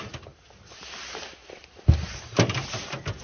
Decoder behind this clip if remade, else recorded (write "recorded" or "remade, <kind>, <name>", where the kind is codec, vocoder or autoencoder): recorded